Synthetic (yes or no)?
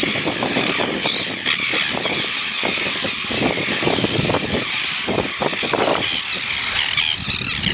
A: no